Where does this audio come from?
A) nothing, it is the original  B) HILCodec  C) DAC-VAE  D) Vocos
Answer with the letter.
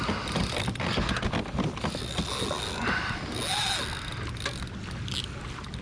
A